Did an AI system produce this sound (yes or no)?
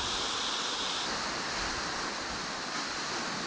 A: no